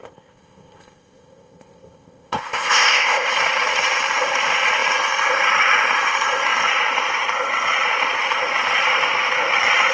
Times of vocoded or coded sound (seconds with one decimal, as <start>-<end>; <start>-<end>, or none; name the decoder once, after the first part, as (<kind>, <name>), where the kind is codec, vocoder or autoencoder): 0.0-3.3 (codec, ZipCodec)